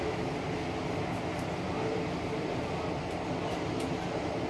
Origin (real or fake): real